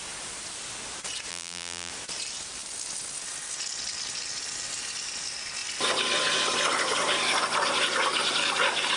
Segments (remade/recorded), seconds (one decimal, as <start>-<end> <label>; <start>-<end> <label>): 0.0-1.3 recorded; 1.3-1.9 remade; 1.9-9.0 recorded